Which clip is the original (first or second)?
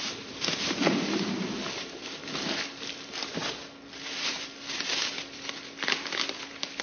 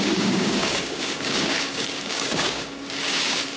first